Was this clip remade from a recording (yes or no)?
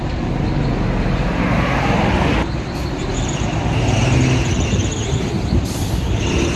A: no